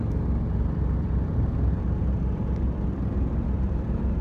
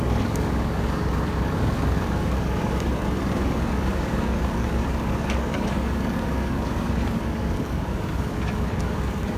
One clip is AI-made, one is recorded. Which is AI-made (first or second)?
second